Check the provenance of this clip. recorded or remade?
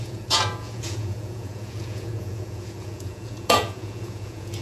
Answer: remade